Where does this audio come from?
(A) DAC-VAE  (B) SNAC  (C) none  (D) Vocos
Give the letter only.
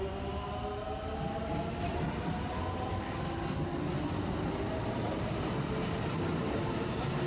C